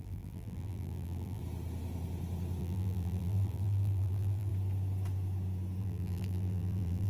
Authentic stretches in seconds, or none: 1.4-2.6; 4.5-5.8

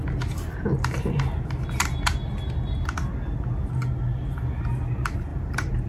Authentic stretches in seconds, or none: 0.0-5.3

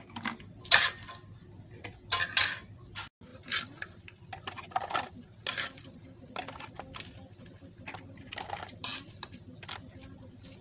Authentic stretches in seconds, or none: 0.0-10.6

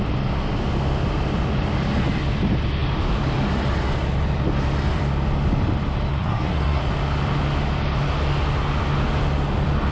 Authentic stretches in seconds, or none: 0.0-6.1; 6.8-9.9

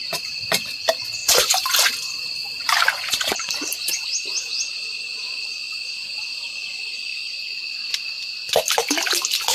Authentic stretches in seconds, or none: 0.0-1.2; 1.9-2.4; 3.5-4.3; 5.5-9.5

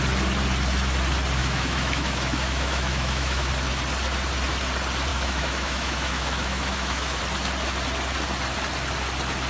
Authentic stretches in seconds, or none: 0.0-1.4; 3.5-5.1; 7.2-9.5